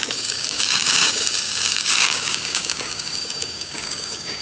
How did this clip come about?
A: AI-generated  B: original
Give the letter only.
A